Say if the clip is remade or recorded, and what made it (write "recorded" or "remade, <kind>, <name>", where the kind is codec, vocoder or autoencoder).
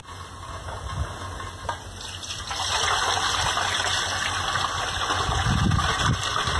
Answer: recorded